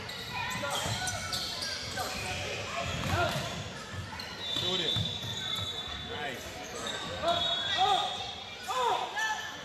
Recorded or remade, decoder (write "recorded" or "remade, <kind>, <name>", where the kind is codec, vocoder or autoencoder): recorded